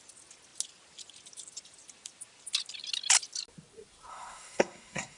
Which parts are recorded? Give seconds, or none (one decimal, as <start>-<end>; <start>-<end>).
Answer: 0.0-4.1